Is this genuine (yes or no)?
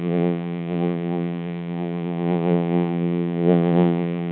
no